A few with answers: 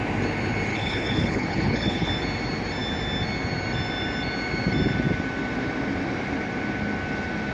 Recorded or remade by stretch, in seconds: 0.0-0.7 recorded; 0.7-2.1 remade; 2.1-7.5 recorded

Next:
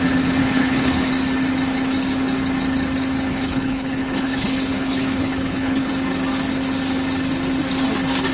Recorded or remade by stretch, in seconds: 0.0-0.4 recorded; 0.4-1.1 remade; 1.1-3.3 recorded; 3.3-5.9 remade; 5.9-8.3 recorded

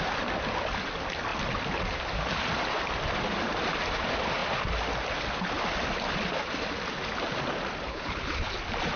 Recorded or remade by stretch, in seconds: 0.0-7.9 recorded; 7.9-8.5 remade; 8.5-9.0 recorded

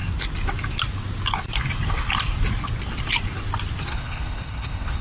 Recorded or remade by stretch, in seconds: 0.0-3.9 recorded; 3.9-5.0 remade

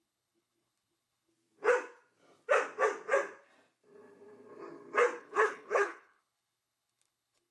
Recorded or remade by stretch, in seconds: 0.0-1.3 remade; 1.3-5.2 recorded; 5.2-7.5 remade

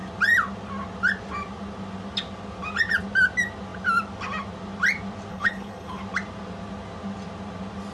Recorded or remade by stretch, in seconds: 0.0-5.3 recorded; 5.3-6.0 remade; 6.0-7.9 recorded